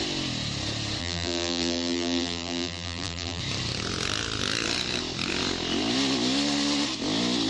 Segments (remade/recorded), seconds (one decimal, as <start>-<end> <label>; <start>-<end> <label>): 0.0-1.0 recorded; 1.0-3.4 remade; 3.4-7.5 recorded